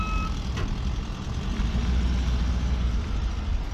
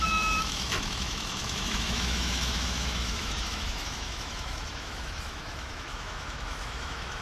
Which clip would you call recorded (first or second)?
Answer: first